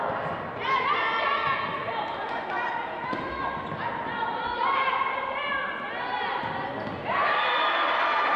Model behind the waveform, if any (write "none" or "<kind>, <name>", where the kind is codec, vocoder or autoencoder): none